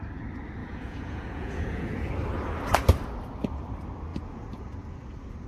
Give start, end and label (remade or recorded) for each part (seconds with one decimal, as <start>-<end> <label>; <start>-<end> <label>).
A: 0.0-0.6 recorded; 0.6-2.1 remade; 2.1-4.1 recorded; 4.1-4.7 remade; 4.7-5.5 recorded